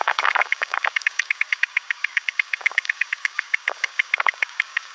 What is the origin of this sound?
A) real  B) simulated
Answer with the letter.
B